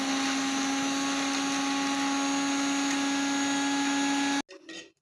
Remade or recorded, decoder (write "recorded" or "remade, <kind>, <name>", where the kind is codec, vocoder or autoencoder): recorded